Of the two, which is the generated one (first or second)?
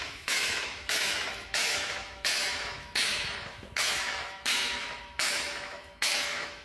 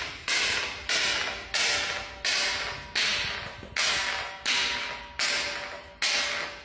first